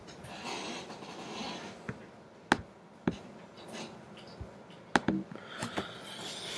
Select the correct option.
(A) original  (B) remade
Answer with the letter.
A